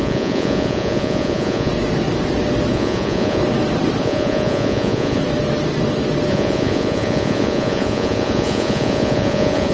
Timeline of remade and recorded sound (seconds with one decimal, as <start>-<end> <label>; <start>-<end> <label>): 0.0-1.7 remade; 1.7-2.7 recorded; 2.7-3.4 remade; 3.4-4.0 recorded; 4.0-5.2 remade; 5.2-6.3 recorded; 6.3-9.7 remade